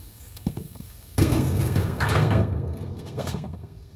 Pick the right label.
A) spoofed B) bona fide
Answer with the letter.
A